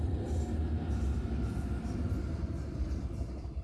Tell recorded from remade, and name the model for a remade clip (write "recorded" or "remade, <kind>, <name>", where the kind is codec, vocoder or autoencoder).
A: recorded